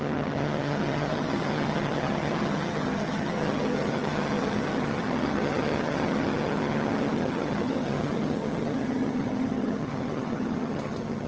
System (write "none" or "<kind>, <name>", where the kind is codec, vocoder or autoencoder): vocoder, HiFi-GAN